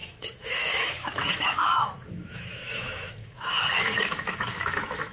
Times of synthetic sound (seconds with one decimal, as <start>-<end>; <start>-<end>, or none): 0.0-5.1